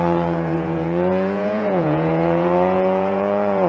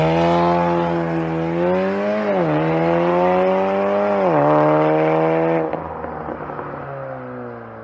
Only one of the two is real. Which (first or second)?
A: second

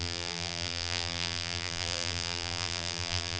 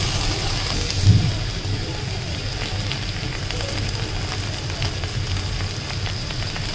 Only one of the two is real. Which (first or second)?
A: second